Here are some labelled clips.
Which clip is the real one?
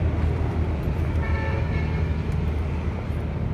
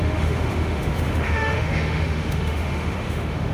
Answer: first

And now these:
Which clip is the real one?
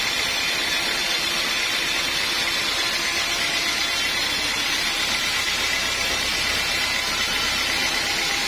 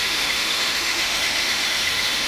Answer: first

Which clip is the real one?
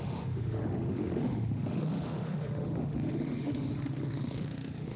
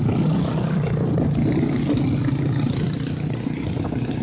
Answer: second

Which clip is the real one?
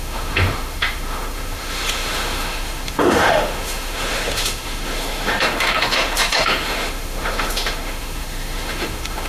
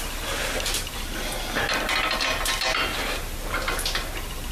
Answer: second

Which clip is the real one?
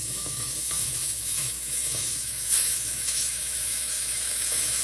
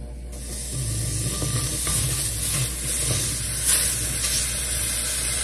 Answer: second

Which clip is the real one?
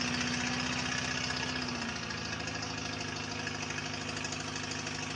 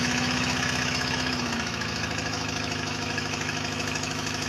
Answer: first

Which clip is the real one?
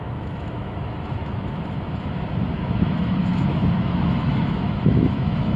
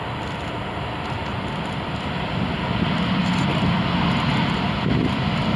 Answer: second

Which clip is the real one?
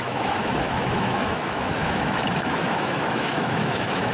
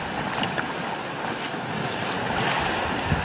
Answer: second